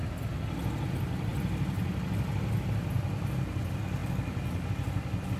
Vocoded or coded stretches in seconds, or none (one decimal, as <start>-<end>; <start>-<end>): none